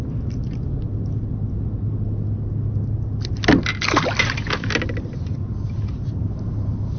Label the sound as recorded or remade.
recorded